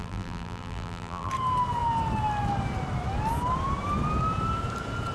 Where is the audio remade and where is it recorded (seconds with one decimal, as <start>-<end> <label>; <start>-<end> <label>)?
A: 0.0-1.3 remade; 1.3-5.1 recorded